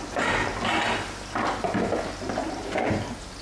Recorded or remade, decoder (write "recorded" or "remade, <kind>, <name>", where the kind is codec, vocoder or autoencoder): recorded